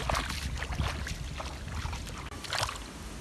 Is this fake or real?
real